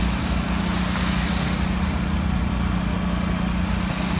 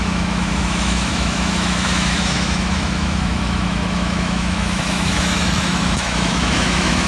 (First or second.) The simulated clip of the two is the second